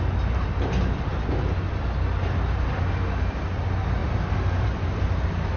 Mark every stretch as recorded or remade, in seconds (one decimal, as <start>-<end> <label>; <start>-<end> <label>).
0.0-5.6 recorded